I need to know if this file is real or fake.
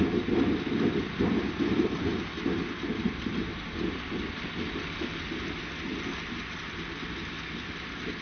real